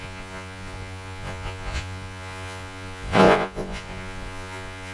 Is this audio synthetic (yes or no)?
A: yes